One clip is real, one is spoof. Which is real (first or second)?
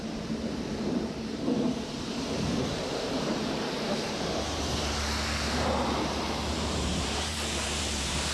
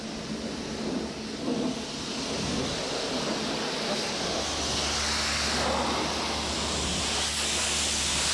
second